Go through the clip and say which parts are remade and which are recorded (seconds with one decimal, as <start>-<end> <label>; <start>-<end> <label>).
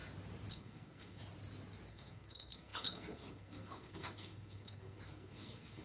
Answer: 0.0-0.5 recorded; 0.5-1.2 remade; 1.2-1.9 recorded; 1.9-5.8 remade